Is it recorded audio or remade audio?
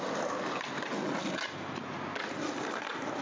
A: recorded